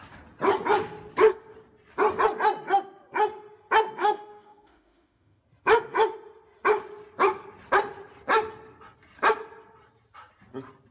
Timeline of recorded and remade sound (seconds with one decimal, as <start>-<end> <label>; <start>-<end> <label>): 0.0-4.0 recorded; 4.0-5.4 remade; 5.4-10.9 recorded